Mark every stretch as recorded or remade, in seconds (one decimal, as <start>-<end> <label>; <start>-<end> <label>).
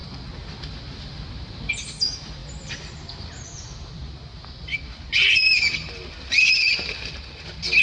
0.0-7.8 recorded